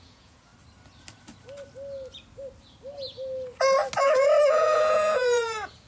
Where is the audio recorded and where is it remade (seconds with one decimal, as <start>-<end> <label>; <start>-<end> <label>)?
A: 0.0-0.5 remade; 0.5-4.0 recorded; 4.0-5.9 remade